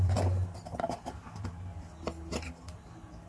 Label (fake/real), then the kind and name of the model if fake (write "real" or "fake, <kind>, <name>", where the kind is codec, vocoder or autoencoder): real